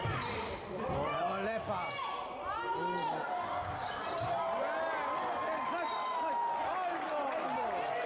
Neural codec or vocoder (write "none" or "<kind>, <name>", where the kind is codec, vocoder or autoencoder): none